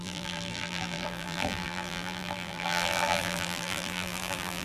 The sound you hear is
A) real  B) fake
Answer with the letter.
B